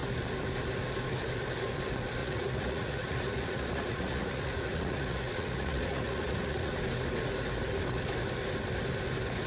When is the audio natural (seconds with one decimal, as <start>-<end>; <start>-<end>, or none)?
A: 0.0-2.2; 6.7-9.5